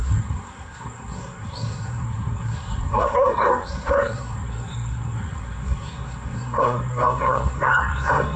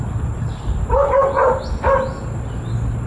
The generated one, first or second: first